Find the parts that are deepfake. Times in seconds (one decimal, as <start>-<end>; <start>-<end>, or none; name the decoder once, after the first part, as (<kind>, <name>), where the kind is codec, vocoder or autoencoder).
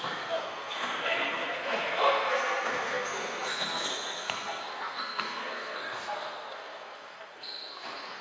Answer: 0.0-8.2 (codec, SNAC)